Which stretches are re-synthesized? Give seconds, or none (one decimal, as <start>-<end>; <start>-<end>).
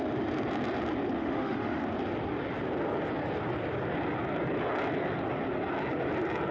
1.2-1.8